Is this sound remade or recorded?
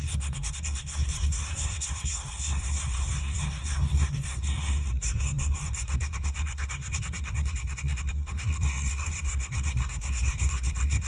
remade